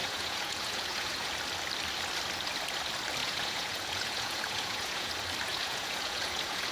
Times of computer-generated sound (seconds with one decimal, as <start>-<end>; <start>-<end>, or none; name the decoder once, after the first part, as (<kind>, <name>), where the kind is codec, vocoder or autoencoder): 0.0-1.3 (vocoder, Vocos); 3.2-5.1; 5.5-6.7